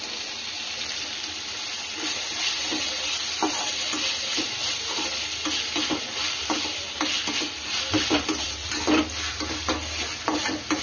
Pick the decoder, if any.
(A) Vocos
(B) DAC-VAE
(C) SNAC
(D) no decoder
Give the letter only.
D